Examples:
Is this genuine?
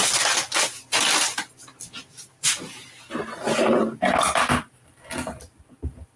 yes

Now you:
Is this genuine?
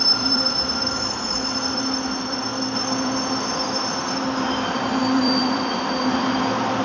no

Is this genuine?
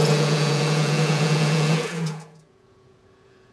no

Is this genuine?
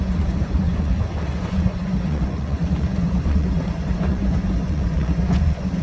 no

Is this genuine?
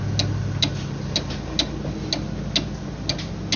yes